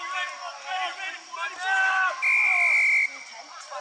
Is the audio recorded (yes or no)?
yes